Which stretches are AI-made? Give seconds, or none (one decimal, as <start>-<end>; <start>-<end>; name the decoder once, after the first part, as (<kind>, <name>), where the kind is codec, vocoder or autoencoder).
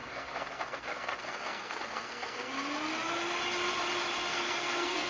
0.0-2.5 (codec, SNAC); 4.3-5.1